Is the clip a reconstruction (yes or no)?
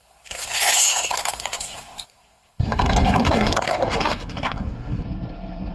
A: yes